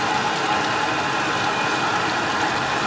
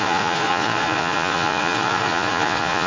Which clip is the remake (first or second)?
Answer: second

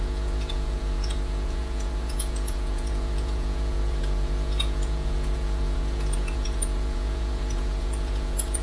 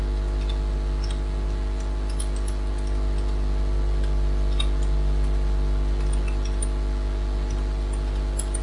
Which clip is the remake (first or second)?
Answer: first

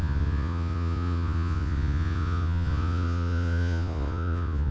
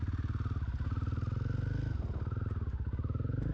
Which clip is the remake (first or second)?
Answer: first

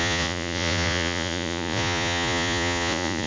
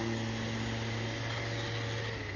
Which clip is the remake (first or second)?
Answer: first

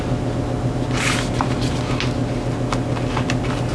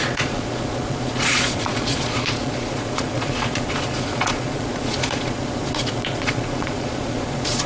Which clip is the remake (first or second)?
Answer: second